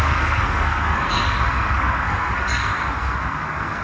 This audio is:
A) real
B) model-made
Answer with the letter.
B